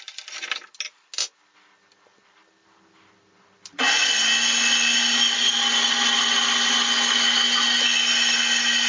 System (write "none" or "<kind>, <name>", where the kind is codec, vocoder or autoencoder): none